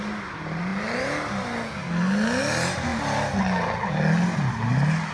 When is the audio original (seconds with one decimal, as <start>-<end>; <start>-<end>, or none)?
0.0-5.1